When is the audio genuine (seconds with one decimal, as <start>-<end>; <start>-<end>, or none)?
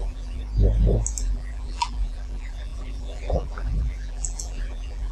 0.4-1.2